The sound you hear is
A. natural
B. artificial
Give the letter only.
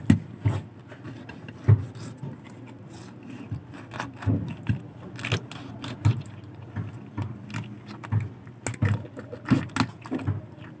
A